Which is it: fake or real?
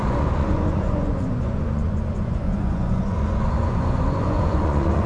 fake